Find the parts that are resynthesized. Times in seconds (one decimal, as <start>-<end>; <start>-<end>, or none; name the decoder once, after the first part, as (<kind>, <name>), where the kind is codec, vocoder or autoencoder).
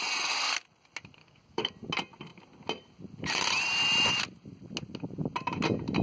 1.2-1.7 (codec, DAC)